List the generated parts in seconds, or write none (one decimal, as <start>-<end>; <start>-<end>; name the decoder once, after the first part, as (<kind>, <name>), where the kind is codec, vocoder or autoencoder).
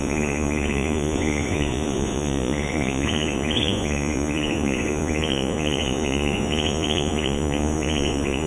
0.0-8.5 (vocoder, Vocos)